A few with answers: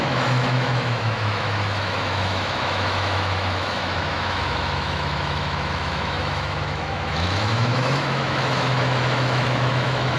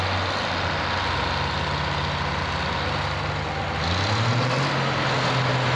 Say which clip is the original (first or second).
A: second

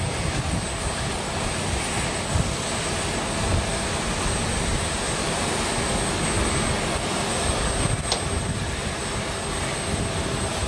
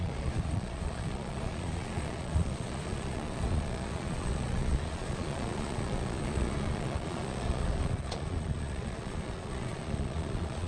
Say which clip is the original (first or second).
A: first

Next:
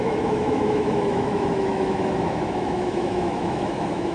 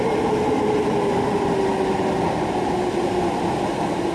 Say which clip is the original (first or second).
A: second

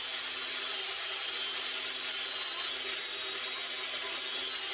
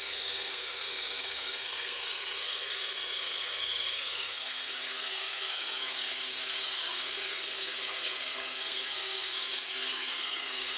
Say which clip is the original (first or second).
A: first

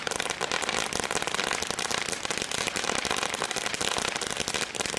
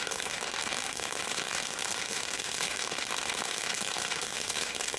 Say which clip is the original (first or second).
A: first